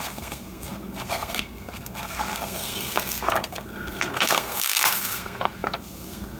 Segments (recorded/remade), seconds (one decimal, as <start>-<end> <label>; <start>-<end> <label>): 0.0-6.4 remade